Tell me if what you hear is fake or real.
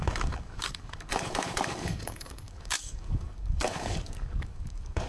fake